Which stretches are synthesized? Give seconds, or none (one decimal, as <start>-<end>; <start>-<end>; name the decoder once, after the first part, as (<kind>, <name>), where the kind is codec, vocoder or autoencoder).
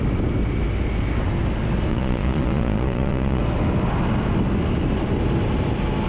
1.9-3.4 (vocoder, Vocos)